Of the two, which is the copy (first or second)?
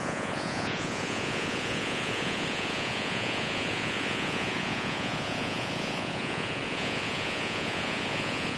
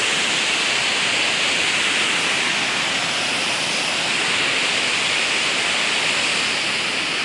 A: first